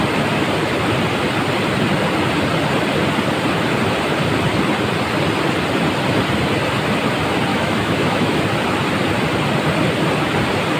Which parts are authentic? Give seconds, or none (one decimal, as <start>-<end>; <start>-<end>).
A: 0.0-7.5; 8.4-10.8